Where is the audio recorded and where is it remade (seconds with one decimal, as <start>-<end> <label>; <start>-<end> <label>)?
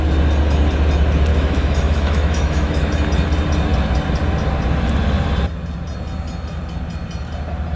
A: 0.0-1.3 recorded; 1.3-2.9 remade; 2.9-7.8 recorded